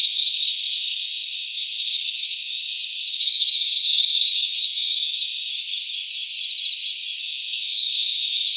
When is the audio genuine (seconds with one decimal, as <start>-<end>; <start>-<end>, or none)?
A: 5.5-7.2